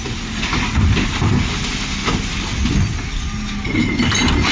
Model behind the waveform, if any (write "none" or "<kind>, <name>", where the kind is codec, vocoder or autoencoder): none